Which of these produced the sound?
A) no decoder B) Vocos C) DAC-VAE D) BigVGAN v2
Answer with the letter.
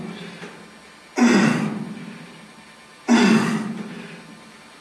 A